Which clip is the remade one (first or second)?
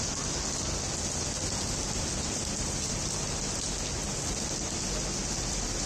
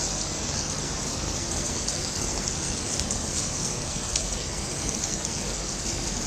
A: second